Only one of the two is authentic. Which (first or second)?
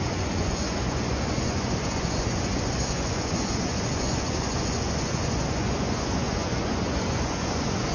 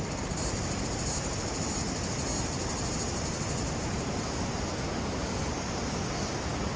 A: second